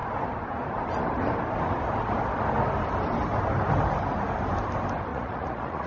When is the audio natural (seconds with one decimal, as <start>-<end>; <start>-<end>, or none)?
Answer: 0.0-5.1